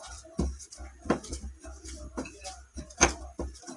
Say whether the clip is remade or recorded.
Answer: recorded